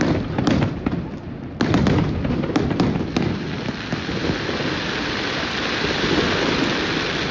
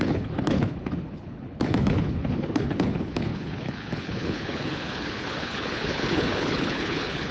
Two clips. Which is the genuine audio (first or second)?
first